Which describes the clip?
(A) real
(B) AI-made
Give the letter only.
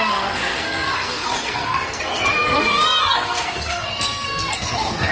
B